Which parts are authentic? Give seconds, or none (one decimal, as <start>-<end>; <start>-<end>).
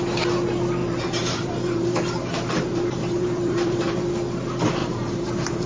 0.0-0.8; 4.1-4.8